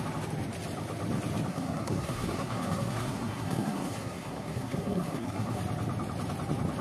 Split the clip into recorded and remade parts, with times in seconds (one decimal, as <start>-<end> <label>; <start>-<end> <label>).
0.0-1.5 recorded; 1.5-5.6 remade; 5.6-6.8 recorded